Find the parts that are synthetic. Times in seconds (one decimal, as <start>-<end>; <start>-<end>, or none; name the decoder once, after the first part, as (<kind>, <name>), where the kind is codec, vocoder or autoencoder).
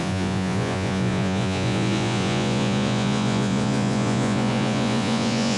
0.0-5.6 (vocoder, Vocos)